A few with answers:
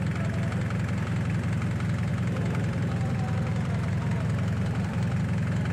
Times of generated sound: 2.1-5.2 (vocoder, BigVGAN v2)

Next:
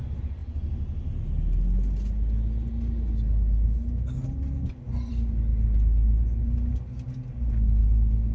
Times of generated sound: none

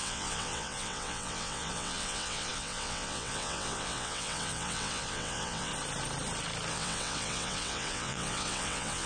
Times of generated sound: 0.0-5.7 (vocoder, WaveNeXt); 6.7-9.1

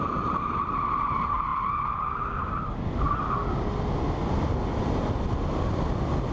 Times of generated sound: none